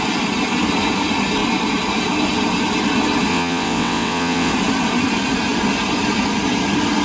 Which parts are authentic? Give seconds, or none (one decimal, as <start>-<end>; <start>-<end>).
0.0-3.3; 4.5-7.0